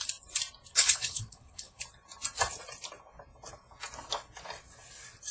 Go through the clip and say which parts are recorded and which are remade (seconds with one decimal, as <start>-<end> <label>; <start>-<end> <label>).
0.0-0.7 recorded; 0.7-1.8 remade; 1.8-5.3 recorded